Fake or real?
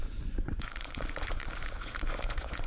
fake